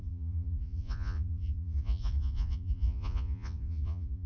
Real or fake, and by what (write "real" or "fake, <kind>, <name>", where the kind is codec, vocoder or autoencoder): fake, vocoder, Vocos